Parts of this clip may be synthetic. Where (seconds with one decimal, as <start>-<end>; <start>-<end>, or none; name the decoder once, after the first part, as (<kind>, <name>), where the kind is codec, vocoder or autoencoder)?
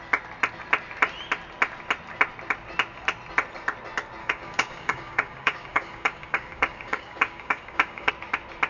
4.2-8.1 (codec, DAC)